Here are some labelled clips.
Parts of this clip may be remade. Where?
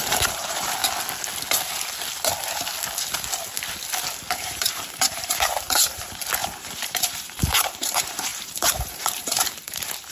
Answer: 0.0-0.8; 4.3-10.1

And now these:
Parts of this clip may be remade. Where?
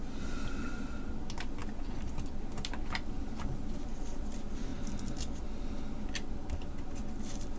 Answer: none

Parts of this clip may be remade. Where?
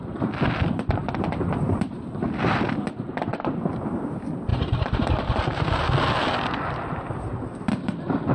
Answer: 4.5-5.1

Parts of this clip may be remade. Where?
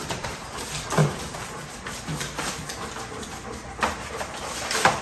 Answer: 0.0-0.6; 1.0-2.5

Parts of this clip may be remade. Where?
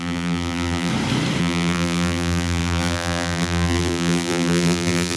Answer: 0.0-0.9; 1.4-5.2